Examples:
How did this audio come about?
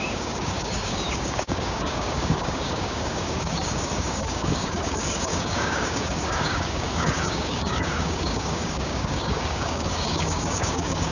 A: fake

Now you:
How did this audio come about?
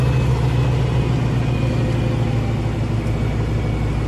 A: real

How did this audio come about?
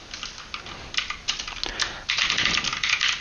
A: real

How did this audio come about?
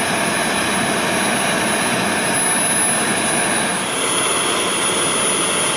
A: real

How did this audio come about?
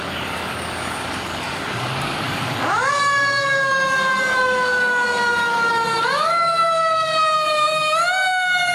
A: fake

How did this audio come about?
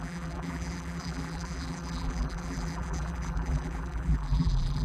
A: fake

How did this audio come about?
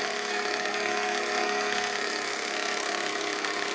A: fake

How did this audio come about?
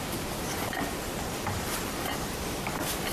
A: real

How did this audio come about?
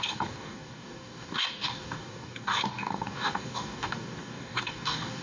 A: fake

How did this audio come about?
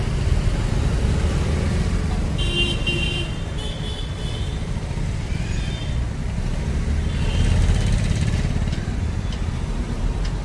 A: real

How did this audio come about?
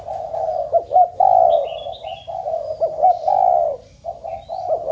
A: real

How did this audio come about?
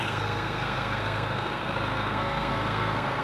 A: fake